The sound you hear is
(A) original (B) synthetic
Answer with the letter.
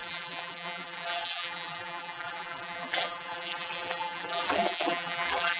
B